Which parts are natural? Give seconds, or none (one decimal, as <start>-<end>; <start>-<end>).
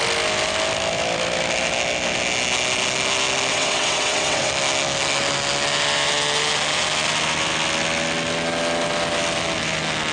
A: 0.0-3.5; 4.5-10.1